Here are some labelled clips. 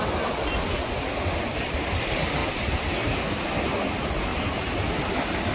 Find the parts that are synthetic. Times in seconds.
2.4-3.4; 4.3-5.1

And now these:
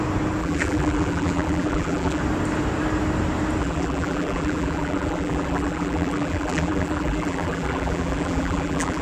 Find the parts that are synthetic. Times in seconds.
0.4-2.2; 3.6-9.0